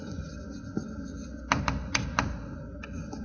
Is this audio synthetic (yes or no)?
no